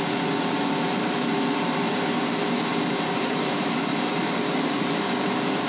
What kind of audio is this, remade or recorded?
remade